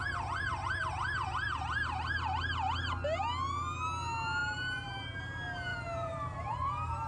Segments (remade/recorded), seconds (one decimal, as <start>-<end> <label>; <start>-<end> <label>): 0.0-4.4 recorded; 4.4-5.2 remade; 5.2-5.7 recorded; 5.7-7.1 remade

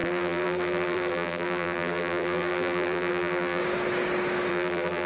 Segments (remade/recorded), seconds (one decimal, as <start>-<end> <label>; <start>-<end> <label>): 0.0-3.6 remade; 3.6-4.5 recorded; 4.5-5.1 remade

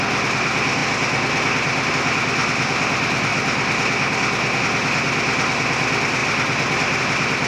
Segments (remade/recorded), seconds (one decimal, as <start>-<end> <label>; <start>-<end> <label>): 0.0-6.2 recorded; 6.2-7.0 remade; 7.0-7.5 recorded

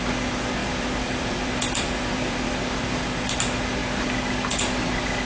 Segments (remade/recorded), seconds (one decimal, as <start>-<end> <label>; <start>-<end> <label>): 0.0-0.6 recorded; 0.6-2.9 remade; 2.9-5.2 recorded